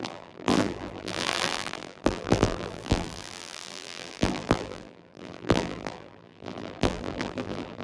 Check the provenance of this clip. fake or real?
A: fake